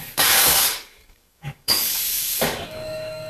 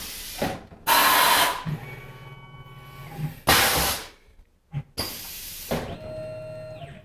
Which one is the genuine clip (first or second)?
second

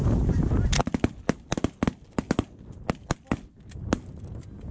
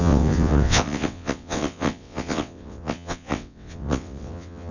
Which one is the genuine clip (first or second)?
first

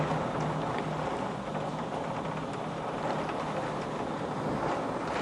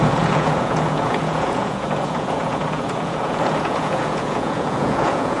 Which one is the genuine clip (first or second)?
first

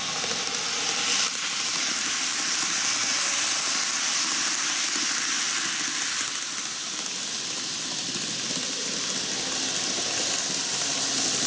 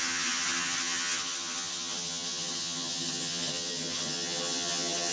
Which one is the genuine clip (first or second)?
first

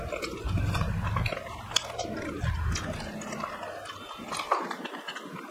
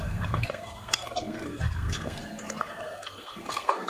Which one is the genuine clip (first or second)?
first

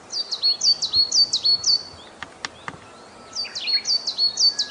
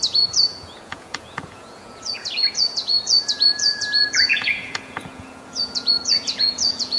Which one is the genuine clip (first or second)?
first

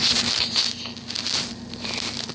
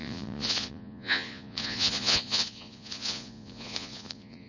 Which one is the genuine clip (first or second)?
first